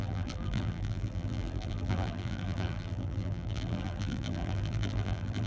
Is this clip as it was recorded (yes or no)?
no